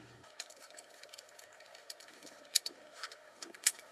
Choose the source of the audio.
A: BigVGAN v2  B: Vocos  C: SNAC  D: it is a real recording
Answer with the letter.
C